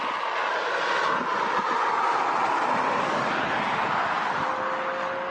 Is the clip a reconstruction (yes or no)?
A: no